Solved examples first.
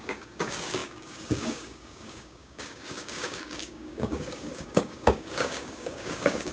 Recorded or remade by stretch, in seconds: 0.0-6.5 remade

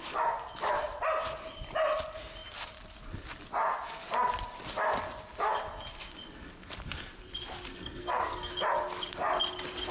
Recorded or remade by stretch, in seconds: 0.0-7.7 recorded; 7.7-8.5 remade; 8.5-9.9 recorded

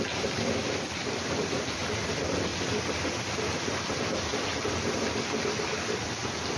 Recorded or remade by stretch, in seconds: 0.0-2.5 remade; 2.5-3.7 recorded; 3.7-4.3 remade; 4.3-6.6 recorded

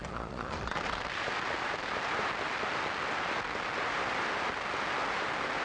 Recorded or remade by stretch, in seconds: 0.0-0.8 remade; 0.8-5.6 recorded

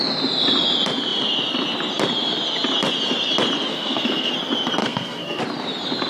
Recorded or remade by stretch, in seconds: 0.0-3.7 recorded; 3.7-4.3 remade; 4.3-4.8 recorded; 4.8-5.4 remade; 5.4-6.1 recorded

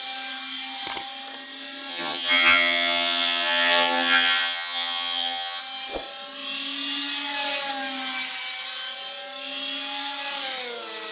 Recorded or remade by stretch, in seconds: 0.0-1.9 recorded; 1.9-5.6 remade; 5.6-11.1 recorded

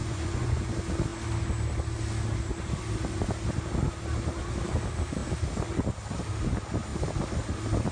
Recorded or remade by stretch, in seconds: 0.0-0.7 remade; 0.7-7.9 recorded

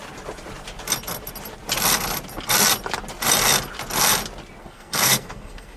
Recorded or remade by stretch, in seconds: 0.0-4.6 recorded; 4.6-5.8 remade